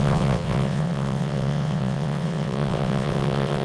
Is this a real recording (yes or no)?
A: no